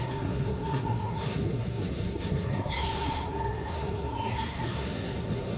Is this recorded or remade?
remade